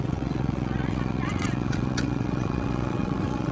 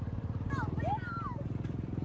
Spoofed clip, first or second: first